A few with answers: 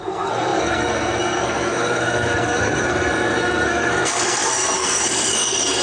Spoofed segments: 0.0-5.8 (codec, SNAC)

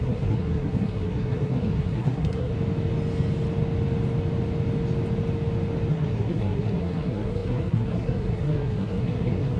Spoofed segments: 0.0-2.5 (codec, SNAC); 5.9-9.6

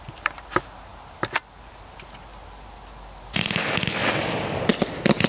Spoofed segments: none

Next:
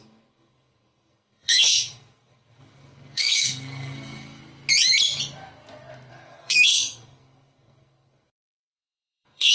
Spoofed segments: 0.0-4.4 (codec, SNAC); 6.1-9.5

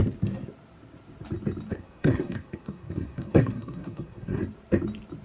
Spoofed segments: 1.7-4.4 (codec, SNAC)

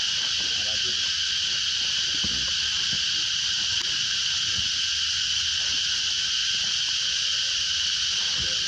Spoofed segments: none